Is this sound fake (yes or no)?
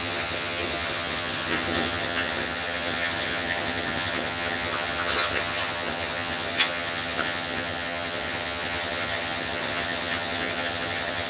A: yes